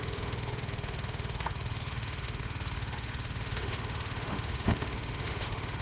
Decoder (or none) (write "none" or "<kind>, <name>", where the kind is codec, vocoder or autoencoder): autoencoder, DAC-VAE